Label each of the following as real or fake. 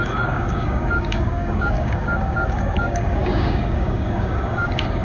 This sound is fake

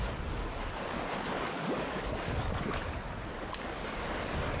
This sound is fake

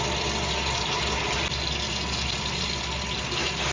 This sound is real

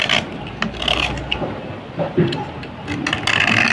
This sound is real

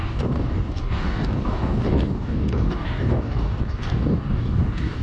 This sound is fake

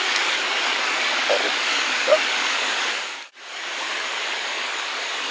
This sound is fake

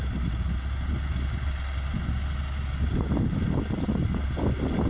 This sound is real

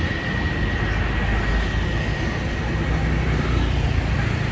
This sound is real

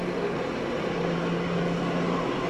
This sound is real